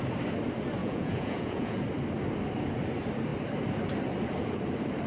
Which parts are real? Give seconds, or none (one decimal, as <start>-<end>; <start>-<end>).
0.0-0.8; 1.8-5.1